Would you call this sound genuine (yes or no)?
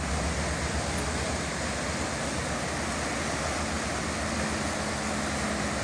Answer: yes